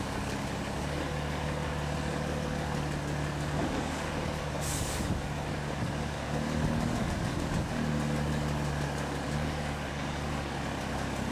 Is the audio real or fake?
fake